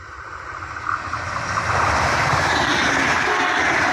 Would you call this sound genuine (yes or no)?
yes